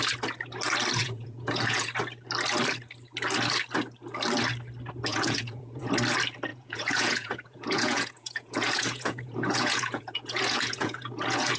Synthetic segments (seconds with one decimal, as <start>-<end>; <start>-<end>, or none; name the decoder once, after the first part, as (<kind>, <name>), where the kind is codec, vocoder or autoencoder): 1.0-1.9 (vocoder, Vocos); 5.1-5.9; 6.5-11.6

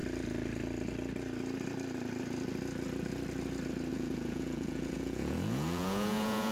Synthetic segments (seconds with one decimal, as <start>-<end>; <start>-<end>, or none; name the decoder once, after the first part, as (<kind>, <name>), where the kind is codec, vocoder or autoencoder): 3.9-6.5 (vocoder, Vocos)

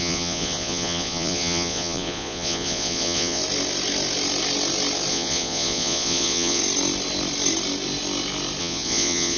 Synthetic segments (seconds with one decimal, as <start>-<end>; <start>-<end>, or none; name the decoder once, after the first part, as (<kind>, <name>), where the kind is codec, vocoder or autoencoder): 0.0-3.4 (vocoder, Vocos); 5.1-6.6; 8.6-9.4